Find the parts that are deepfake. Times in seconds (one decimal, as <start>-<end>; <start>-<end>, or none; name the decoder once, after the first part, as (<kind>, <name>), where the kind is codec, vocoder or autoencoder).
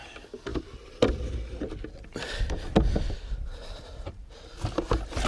none